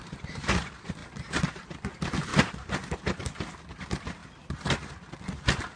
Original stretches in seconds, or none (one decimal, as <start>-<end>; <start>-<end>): 1.0-1.5; 4.2-5.8